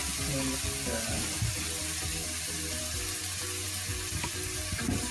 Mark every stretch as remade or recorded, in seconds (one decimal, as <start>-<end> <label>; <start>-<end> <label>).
0.0-5.1 recorded